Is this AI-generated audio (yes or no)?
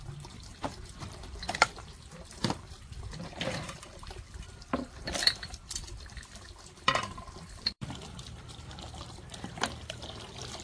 yes